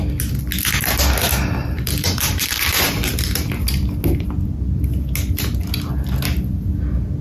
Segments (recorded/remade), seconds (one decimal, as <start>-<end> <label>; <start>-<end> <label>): 0.0-1.6 recorded; 1.6-3.5 remade; 3.5-7.2 recorded